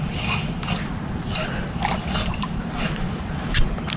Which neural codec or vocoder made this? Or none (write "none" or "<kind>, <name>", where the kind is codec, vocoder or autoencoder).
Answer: none